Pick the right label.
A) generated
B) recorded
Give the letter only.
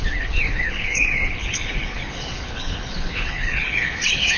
A